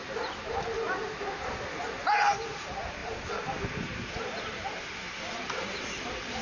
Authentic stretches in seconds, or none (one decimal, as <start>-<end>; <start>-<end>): 0.0-2.2